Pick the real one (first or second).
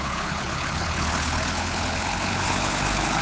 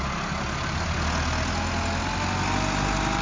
second